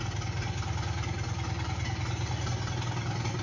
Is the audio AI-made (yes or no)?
no